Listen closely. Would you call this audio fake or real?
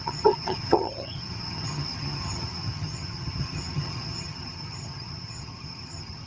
fake